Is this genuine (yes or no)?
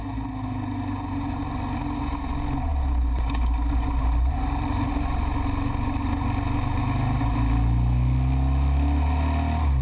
yes